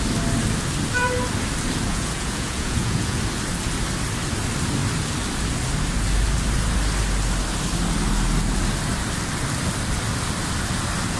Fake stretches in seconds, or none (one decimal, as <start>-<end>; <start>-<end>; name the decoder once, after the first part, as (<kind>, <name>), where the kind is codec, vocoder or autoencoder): 1.9-3.2 (vocoder, Vocos)